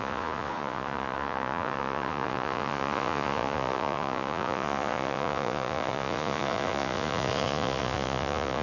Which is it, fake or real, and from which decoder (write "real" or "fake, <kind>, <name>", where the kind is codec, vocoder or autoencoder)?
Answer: fake, vocoder, Vocos